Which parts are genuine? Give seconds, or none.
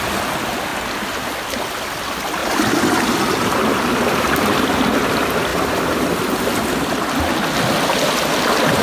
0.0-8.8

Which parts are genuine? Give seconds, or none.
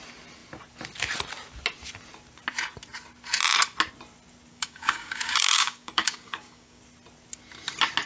0.0-4.5; 6.8-8.1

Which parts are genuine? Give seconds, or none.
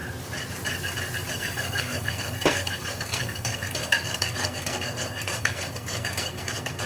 0.0-1.3